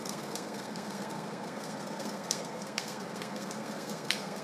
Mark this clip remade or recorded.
remade